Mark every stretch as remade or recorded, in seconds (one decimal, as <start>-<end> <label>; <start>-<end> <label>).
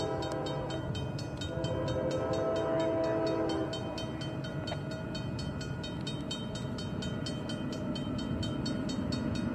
0.0-9.5 recorded